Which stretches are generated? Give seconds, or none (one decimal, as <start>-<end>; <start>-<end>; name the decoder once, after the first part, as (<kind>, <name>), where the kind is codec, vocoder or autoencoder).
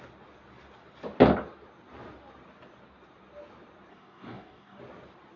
3.9-4.8 (codec, DAC)